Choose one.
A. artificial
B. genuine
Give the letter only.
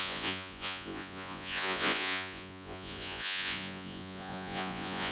A